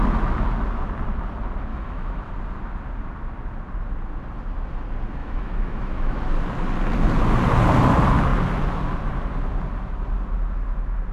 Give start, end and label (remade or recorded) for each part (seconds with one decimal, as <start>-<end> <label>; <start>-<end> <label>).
0.0-1.7 recorded; 1.7-2.3 remade; 2.3-5.2 recorded; 5.2-6.3 remade; 6.3-11.1 recorded